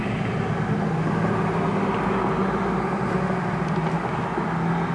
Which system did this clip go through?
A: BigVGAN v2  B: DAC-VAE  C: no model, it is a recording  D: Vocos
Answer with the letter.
C